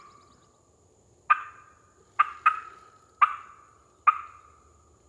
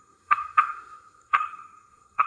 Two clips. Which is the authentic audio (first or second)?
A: first